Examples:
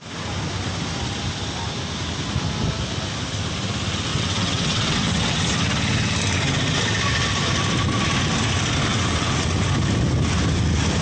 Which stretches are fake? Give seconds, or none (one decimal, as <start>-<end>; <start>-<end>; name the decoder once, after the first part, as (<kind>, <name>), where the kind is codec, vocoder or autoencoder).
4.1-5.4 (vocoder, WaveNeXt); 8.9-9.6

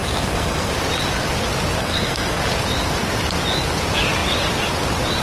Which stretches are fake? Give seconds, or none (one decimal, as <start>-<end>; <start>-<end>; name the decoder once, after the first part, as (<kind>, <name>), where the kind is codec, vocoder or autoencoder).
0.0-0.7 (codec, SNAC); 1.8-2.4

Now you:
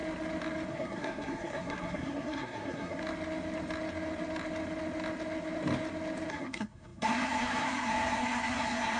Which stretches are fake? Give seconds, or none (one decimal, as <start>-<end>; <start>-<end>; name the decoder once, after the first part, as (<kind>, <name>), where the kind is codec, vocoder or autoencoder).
0.7-3.0 (codec, SNAC); 6.3-9.0

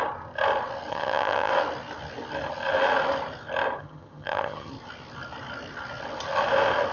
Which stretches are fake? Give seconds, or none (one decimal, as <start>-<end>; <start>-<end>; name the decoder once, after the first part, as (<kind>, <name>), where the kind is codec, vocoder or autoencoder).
0.9-1.5 (vocoder, HiFi-GAN); 3.8-4.7